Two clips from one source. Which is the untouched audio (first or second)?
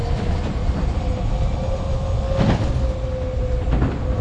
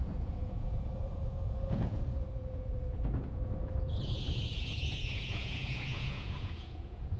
first